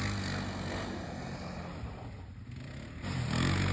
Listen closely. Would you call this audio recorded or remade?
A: recorded